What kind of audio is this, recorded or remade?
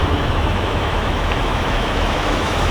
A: remade